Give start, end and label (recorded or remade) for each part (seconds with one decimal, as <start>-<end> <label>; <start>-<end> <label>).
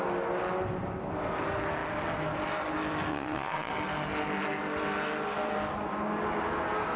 0.0-3.1 recorded; 3.1-3.7 remade; 3.7-7.0 recorded